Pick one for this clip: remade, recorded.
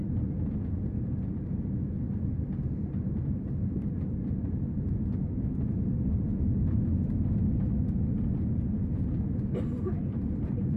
recorded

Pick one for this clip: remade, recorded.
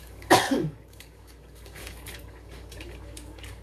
remade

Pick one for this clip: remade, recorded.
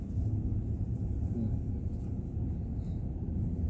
recorded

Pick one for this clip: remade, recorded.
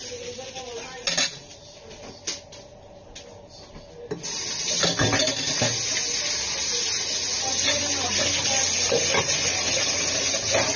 recorded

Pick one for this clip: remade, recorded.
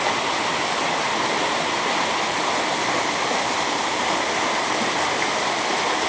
recorded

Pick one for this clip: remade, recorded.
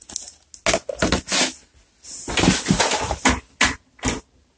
recorded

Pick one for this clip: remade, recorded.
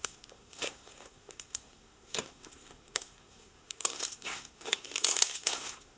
remade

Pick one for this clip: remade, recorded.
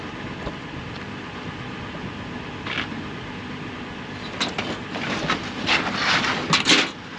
recorded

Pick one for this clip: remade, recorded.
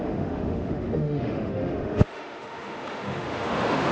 remade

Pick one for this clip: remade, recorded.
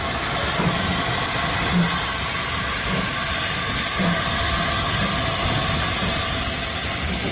recorded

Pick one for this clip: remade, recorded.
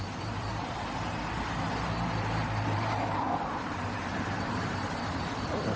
remade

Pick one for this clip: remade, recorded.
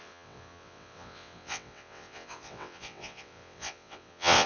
remade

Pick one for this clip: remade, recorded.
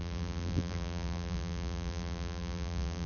remade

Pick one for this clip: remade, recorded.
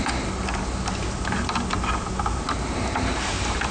recorded